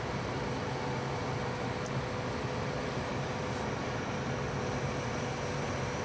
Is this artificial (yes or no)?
no